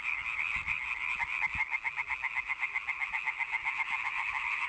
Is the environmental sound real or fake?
real